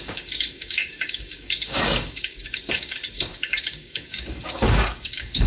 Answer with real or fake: fake